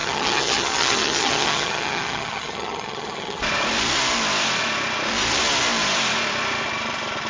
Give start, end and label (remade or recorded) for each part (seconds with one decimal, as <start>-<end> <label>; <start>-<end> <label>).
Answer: 0.0-3.4 remade; 3.4-7.3 recorded